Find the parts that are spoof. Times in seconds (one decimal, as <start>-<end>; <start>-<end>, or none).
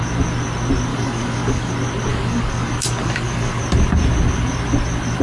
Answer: 0.9-1.7; 2.1-3.6